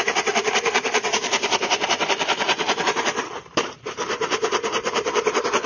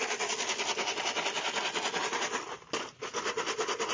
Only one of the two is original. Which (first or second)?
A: second